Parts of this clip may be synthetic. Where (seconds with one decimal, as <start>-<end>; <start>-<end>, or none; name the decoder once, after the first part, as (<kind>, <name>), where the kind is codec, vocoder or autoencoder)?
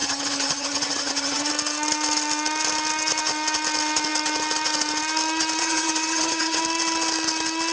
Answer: 0.0-1.5 (vocoder, HiFi-GAN); 5.6-6.6